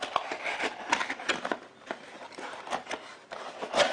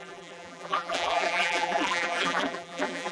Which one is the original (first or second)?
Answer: first